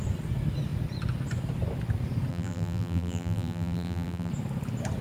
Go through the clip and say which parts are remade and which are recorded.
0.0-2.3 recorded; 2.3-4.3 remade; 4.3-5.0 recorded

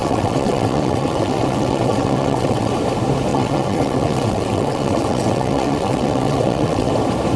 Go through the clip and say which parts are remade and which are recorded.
0.0-2.7 remade; 2.7-3.3 recorded; 3.3-6.9 remade; 6.9-7.4 recorded

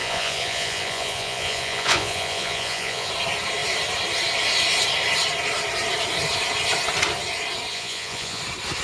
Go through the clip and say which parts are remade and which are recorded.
0.0-3.1 remade; 3.1-7.7 recorded; 7.7-8.4 remade; 8.4-8.8 recorded